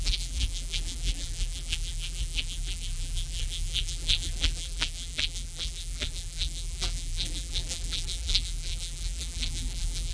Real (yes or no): no